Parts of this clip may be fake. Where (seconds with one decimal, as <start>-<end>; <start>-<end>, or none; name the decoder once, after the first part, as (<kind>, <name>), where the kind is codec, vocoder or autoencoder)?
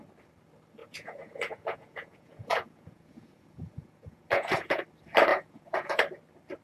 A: 0.8-4.8 (vocoder, Vocos); 5.3-6.0